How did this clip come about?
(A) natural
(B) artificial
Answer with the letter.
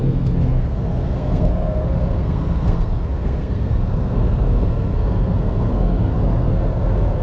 B